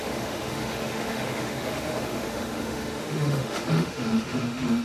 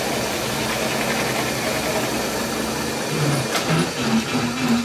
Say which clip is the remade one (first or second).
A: first